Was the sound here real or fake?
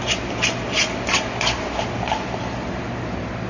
real